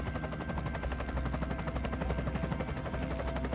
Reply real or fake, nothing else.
real